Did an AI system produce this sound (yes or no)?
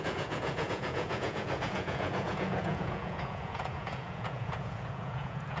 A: yes